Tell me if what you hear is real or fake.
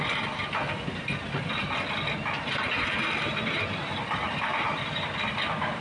fake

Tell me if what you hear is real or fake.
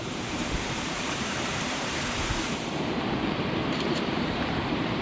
fake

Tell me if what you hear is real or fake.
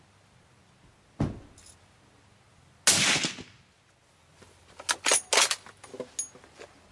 real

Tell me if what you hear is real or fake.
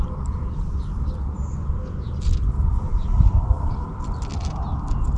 real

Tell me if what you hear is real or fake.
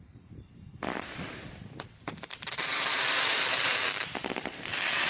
fake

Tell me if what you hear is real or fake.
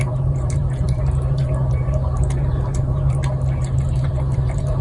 fake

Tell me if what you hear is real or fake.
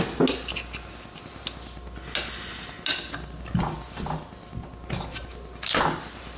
real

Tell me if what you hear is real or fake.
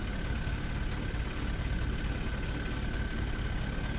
real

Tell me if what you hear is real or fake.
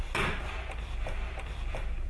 fake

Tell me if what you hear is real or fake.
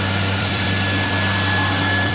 fake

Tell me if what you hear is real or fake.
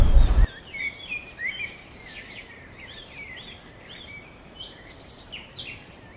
fake